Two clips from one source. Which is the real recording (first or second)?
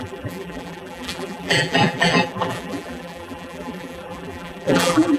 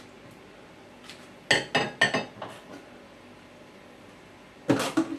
second